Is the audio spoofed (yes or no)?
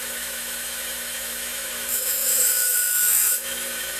yes